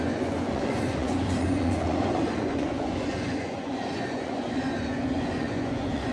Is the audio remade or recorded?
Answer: remade